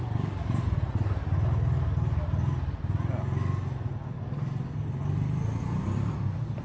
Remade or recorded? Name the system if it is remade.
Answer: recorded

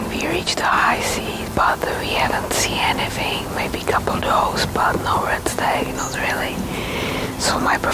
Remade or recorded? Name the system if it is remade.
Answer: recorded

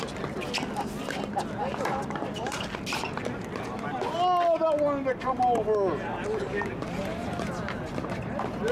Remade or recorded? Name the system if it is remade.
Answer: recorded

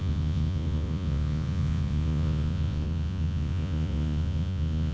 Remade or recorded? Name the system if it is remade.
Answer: remade, vocoder, Vocos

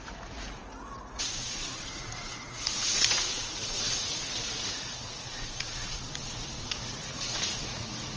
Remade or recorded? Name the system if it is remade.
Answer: remade, vocoder, Vocos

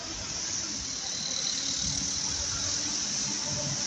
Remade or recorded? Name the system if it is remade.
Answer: recorded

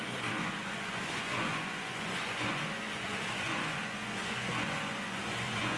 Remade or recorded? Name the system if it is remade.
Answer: remade, vocoder, Vocos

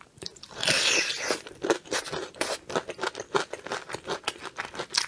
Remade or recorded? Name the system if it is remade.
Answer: recorded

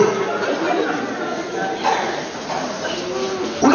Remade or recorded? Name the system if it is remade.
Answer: recorded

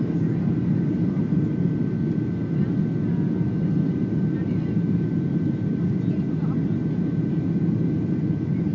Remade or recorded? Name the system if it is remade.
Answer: recorded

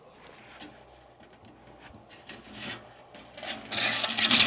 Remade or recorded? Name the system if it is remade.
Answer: recorded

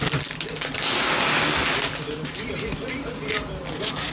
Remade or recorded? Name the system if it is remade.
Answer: recorded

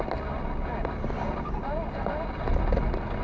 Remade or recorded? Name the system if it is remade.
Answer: recorded